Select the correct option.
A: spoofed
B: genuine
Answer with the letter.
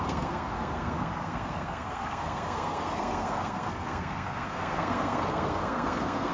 A